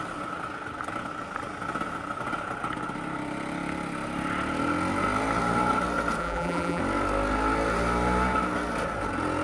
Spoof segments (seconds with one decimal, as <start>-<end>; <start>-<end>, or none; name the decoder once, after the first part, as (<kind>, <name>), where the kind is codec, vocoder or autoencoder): 6.2-6.8 (vocoder, BigVGAN v2)